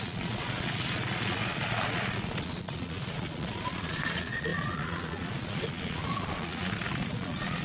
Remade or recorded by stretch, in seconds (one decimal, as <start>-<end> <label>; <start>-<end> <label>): 0.0-7.6 remade